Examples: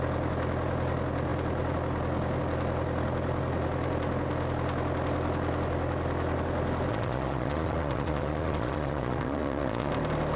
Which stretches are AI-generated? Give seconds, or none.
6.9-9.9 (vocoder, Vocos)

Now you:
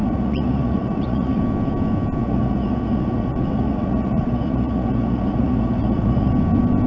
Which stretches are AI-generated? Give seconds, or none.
0.0-1.4 (vocoder, Vocos); 2.2-6.3

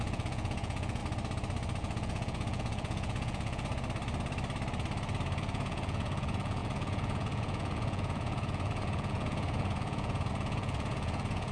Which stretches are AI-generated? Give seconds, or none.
0.0-1.0 (vocoder, Vocos); 1.8-3.7; 5.4-11.5

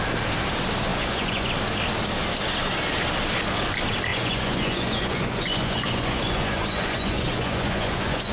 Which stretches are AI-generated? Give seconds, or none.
0.9-1.5 (vocoder, Vocos); 4.1-8.3